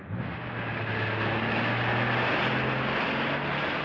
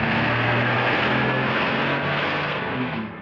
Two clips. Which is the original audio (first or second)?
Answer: first